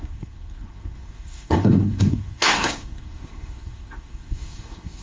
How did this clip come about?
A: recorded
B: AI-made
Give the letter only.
B